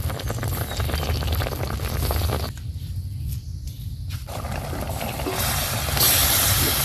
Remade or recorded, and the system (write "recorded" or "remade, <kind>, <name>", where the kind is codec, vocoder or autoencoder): recorded